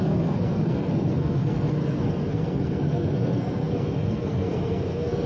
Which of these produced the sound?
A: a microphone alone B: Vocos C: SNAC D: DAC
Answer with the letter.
C